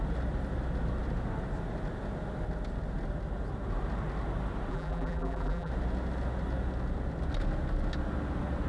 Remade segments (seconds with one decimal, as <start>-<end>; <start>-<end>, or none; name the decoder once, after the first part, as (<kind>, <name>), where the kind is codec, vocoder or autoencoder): 4.7-5.7 (vocoder, BigVGAN v2)